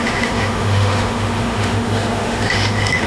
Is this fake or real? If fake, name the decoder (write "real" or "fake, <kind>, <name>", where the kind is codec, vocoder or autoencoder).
fake, autoencoder, DAC-VAE